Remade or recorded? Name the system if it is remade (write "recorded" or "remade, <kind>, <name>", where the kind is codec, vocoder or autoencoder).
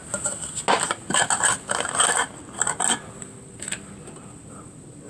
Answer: recorded